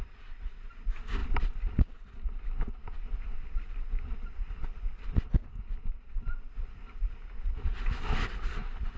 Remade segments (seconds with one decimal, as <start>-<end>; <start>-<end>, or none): 5.9-6.5

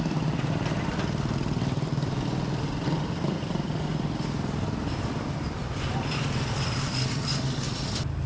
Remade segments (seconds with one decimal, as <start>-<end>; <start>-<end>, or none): 0.0-8.3

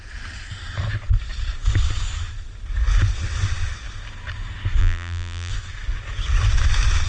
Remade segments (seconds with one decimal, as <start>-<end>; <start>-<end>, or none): 4.8-5.5

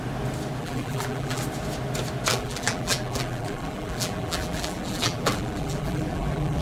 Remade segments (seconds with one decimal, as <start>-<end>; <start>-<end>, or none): 0.6-1.4; 2.3-6.6

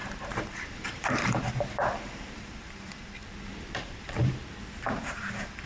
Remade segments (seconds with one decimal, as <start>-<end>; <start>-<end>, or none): 0.0-3.2; 3.8-4.4; 5.0-5.7

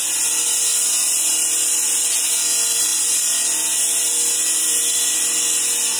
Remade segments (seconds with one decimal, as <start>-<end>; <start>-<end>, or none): none